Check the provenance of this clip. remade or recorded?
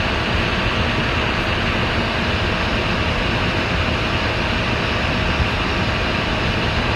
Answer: recorded